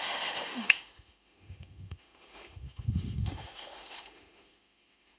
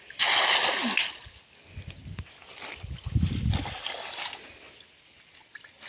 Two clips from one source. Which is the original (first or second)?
second